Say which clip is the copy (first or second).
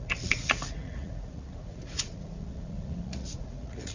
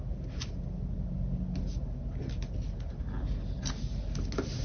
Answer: first